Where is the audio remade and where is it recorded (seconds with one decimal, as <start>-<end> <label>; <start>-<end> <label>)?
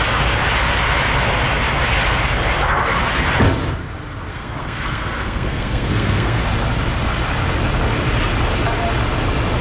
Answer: 0.0-4.3 recorded; 4.3-6.4 remade; 6.4-9.6 recorded